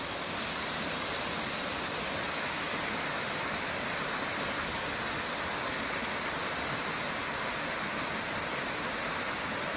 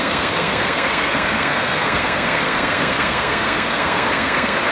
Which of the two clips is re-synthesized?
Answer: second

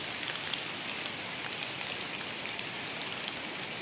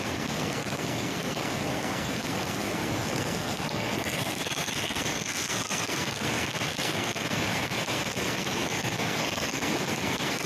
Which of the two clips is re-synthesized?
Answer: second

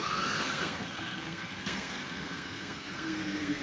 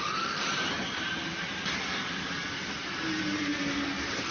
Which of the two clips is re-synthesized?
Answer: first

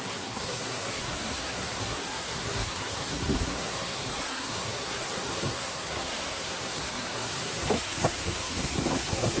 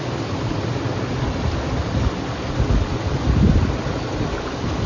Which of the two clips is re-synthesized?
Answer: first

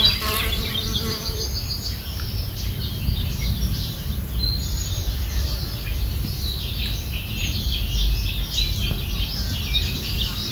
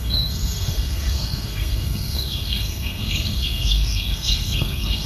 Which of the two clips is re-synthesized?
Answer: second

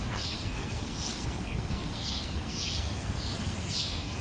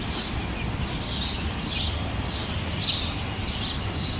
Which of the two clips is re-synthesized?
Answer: first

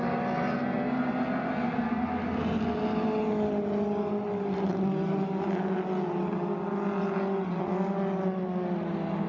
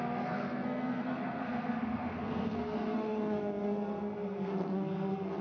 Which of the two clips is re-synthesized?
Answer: second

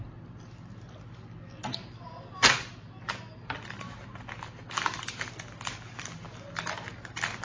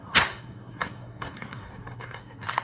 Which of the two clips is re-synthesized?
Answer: second